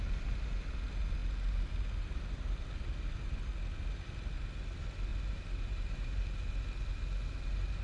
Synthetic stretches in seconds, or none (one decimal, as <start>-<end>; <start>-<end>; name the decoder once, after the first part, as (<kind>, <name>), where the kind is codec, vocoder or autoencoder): 5.1-6.5 (vocoder, BigVGAN v2)